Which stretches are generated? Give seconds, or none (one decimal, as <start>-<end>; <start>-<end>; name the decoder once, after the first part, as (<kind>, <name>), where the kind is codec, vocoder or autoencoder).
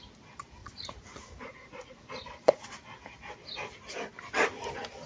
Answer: 0.6-2.1 (vocoder, Vocos)